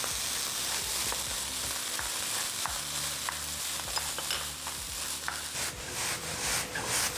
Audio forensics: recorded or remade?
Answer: recorded